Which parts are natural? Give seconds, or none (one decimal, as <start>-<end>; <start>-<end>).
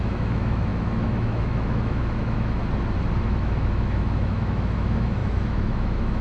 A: 2.6-3.2